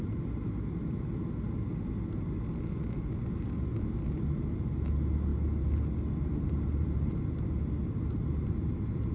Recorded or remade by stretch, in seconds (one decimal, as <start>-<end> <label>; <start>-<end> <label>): 0.0-9.1 recorded